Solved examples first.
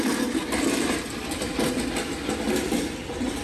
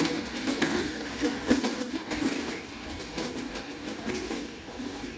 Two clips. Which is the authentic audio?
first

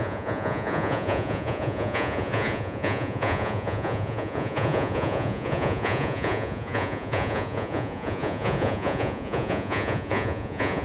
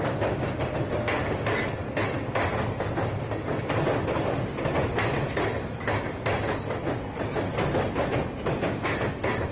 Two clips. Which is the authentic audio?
second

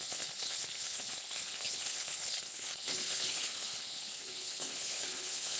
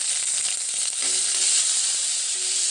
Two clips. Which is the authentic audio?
second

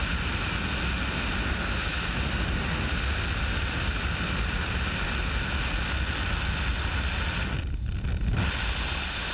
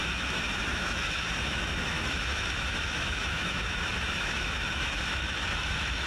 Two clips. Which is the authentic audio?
first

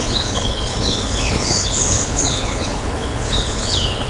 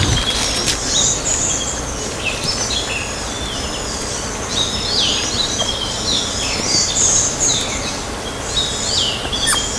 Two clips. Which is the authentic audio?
second